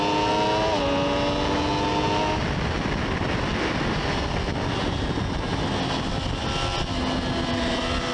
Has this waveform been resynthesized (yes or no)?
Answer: no